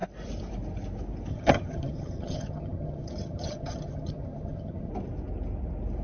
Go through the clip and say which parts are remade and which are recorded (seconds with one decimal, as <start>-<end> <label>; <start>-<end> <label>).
0.0-1.3 recorded; 1.3-4.9 remade; 4.9-6.0 recorded